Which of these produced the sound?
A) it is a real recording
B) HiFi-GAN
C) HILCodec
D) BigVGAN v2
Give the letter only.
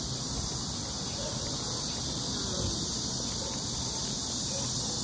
A